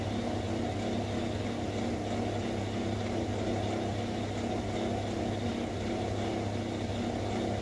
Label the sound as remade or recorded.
recorded